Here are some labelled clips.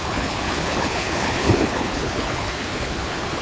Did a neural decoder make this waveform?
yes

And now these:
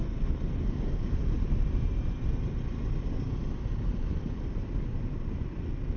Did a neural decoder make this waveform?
no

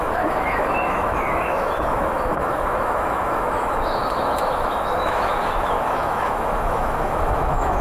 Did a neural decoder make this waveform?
yes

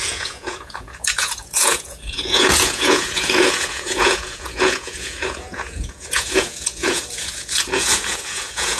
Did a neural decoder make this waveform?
yes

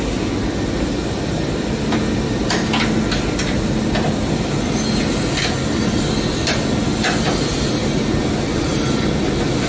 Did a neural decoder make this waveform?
no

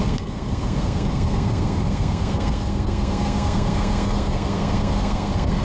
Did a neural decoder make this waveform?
yes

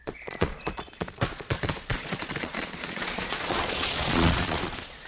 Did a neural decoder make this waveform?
yes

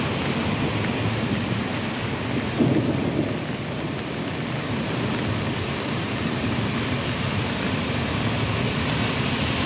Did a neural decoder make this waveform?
no